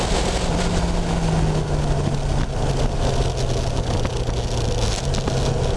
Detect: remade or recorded recorded